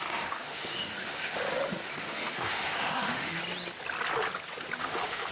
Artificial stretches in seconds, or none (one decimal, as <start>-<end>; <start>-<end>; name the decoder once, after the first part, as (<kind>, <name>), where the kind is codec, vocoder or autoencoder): 0.0-1.5 (autoencoder, DAC-VAE); 2.0-3.4; 4.8-5.3